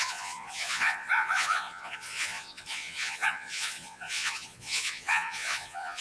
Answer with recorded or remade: remade